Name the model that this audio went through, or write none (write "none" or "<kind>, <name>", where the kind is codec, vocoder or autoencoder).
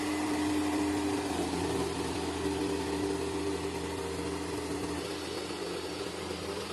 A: none